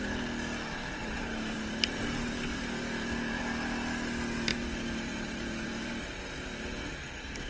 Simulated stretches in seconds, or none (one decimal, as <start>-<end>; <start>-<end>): 1.0-3.4; 4.5-6.0